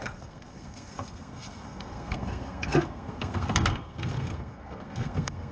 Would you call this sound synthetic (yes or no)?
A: yes